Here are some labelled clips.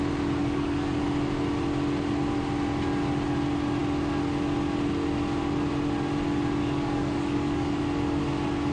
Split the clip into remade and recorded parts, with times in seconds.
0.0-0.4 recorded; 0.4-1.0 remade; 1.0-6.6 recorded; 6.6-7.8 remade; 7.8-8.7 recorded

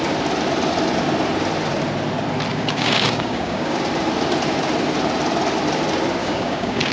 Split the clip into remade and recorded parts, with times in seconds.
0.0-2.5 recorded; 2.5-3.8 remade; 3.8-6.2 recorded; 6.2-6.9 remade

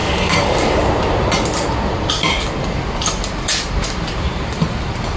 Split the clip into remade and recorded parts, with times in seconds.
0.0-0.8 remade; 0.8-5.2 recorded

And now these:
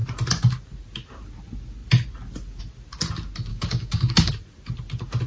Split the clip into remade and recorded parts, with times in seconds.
0.0-3.5 recorded; 3.5-4.3 remade; 4.3-5.3 recorded

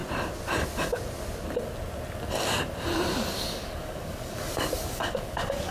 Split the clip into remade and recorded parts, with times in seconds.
0.0-3.3 recorded; 3.3-5.7 remade

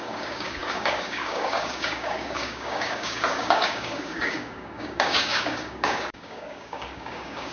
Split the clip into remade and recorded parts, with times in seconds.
0.0-7.5 remade

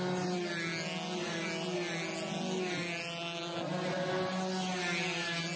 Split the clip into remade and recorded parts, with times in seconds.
0.0-5.6 recorded

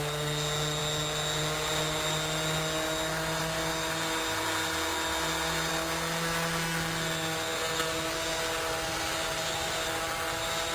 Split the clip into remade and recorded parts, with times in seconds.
0.0-10.7 recorded